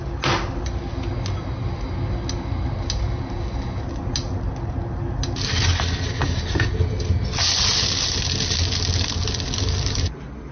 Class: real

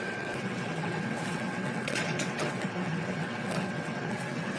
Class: fake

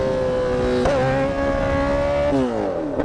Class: real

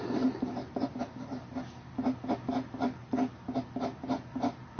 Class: real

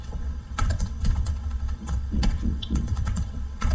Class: fake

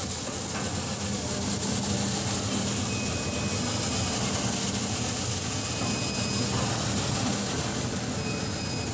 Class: real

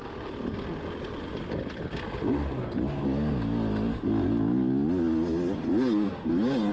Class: real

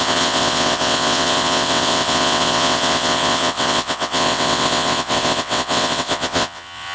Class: fake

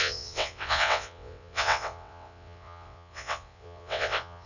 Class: fake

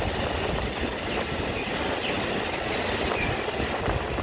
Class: real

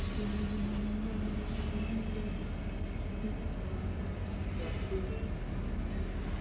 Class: real